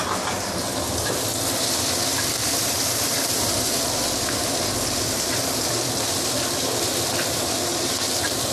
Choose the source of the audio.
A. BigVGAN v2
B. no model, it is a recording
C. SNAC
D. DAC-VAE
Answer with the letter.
A